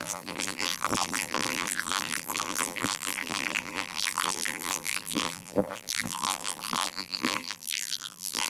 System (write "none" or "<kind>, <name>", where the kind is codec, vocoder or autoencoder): vocoder, BigVGAN v2